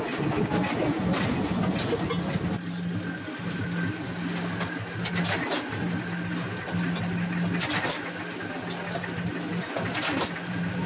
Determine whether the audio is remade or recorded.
recorded